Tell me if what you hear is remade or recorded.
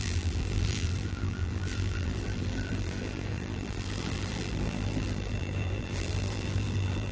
remade